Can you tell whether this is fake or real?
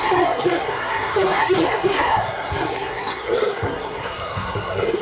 fake